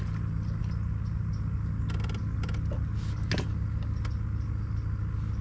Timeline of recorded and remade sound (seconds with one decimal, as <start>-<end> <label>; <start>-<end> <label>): 0.0-5.4 recorded